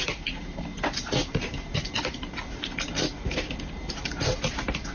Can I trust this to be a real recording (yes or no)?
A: yes